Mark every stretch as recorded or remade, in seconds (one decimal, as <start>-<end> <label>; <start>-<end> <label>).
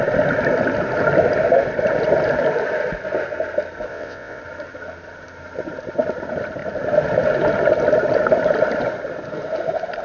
0.0-3.9 recorded; 3.9-4.4 remade; 4.4-10.0 recorded